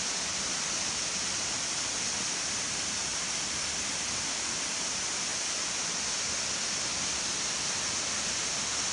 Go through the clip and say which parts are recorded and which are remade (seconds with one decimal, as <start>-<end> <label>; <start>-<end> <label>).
0.0-3.1 remade; 3.1-4.3 recorded; 4.3-5.3 remade; 5.3-8.5 recorded; 8.5-8.9 remade